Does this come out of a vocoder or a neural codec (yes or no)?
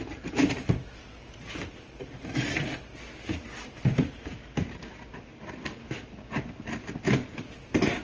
no